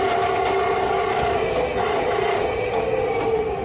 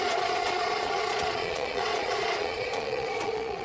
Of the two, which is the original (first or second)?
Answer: first